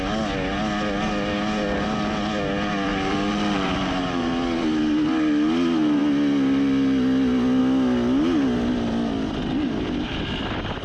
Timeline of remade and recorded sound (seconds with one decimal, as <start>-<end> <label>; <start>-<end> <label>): 0.0-2.9 recorded; 2.9-4.3 remade; 4.3-10.8 recorded